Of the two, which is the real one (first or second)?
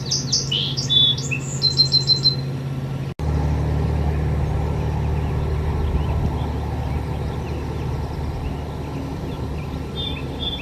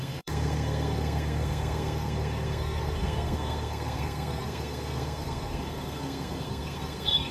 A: first